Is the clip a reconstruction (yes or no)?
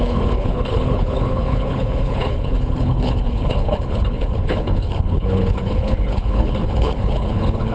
yes